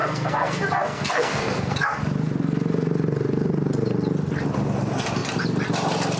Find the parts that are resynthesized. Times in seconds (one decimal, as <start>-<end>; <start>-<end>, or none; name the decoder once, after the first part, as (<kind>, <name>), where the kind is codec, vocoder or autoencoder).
0.0-2.0 (codec, SNAC)